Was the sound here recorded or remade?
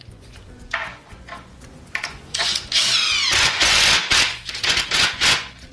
remade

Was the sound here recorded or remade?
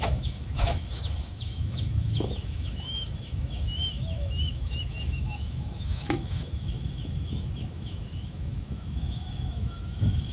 remade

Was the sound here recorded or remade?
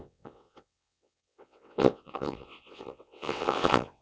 remade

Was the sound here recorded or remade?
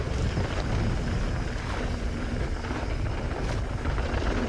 recorded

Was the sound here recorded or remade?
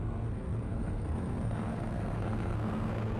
remade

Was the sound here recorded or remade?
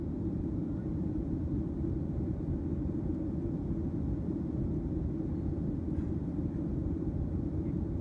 recorded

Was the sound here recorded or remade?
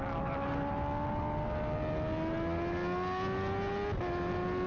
recorded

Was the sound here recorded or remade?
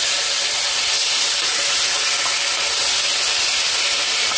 recorded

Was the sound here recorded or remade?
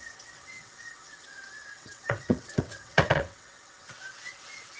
remade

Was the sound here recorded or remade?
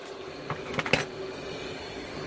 recorded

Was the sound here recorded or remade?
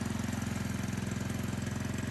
recorded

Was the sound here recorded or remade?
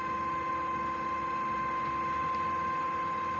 recorded